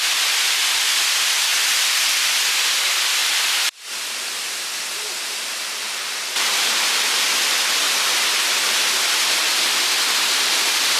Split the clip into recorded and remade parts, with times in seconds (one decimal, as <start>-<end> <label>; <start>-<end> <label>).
0.0-3.2 recorded; 3.2-7.0 remade; 7.0-11.0 recorded